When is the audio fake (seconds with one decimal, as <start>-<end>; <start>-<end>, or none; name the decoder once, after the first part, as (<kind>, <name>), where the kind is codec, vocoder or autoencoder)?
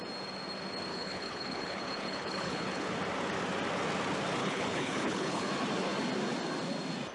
0.9-2.9 (codec, HILCodec); 4.4-5.5